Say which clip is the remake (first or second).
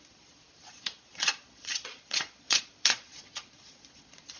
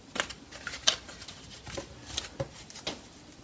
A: first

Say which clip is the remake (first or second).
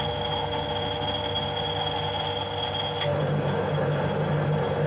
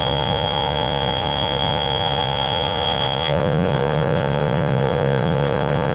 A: second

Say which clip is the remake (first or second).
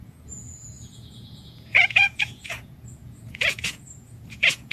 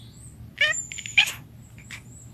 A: first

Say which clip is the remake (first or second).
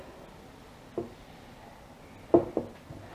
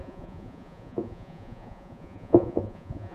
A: second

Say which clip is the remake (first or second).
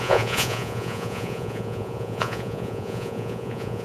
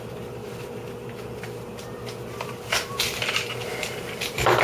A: first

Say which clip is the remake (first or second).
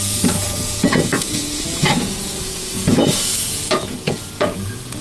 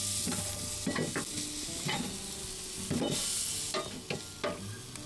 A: first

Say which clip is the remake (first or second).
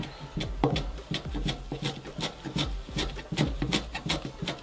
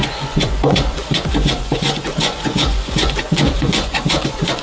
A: second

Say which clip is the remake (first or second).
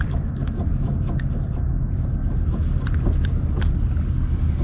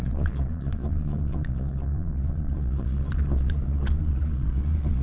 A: second